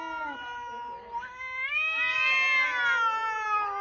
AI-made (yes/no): no